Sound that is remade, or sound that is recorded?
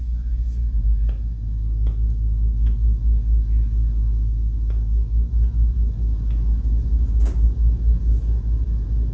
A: recorded